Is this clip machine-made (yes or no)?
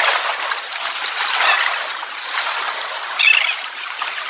no